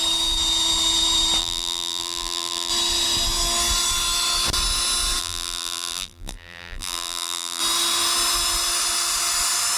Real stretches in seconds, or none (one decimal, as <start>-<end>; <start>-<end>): 0.0-1.4; 2.7-5.2; 7.6-9.8